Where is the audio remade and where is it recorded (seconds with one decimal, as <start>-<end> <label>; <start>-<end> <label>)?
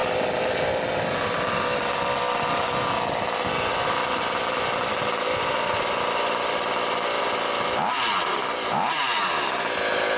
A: 0.0-3.7 recorded; 3.7-7.2 remade; 7.2-10.2 recorded